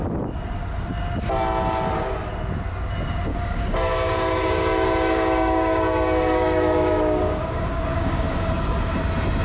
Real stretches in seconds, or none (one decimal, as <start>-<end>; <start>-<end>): 0.0-3.3; 8.5-9.4